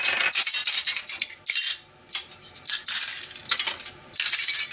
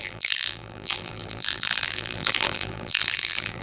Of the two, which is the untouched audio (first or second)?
first